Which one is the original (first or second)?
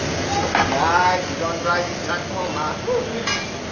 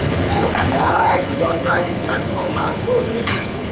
first